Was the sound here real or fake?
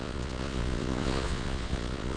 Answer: fake